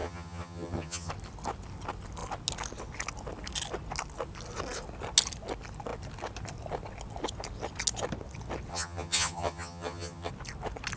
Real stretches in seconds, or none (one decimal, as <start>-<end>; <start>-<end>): 1.1-8.7; 10.3-11.0